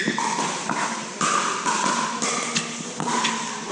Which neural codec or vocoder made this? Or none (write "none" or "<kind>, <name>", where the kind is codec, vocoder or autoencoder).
none